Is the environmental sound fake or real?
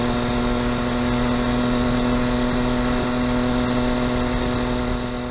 real